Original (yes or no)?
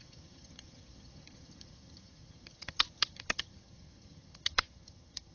no